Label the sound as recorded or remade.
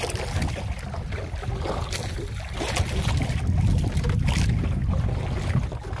recorded